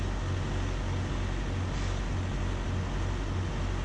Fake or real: real